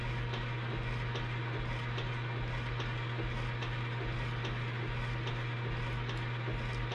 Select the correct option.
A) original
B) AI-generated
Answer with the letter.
A